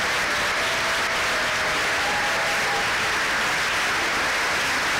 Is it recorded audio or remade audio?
recorded